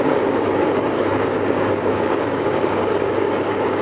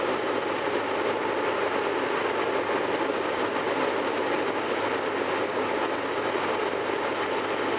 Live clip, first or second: second